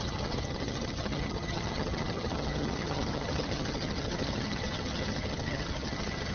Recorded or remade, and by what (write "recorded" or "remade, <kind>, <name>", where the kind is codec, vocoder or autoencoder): remade, vocoder, HiFi-GAN